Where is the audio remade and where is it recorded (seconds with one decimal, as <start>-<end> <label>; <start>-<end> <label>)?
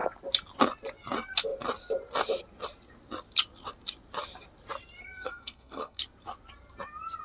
0.0-5.0 recorded; 5.0-6.0 remade; 6.0-7.2 recorded